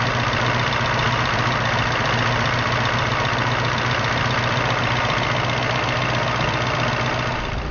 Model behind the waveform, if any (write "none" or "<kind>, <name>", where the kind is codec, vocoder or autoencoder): none